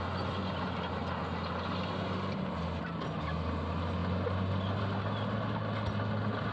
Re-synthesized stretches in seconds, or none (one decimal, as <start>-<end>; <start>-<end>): none